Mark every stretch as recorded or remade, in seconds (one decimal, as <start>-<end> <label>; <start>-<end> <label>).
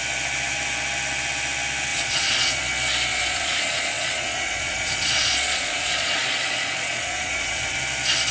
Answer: 0.0-1.9 recorded; 1.9-2.6 remade; 2.6-3.1 recorded; 3.1-7.8 remade; 7.8-8.3 recorded